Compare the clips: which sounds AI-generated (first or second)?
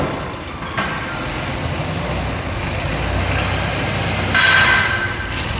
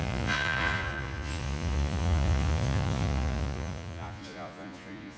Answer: second